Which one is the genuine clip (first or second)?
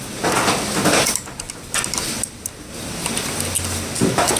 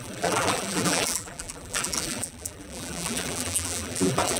first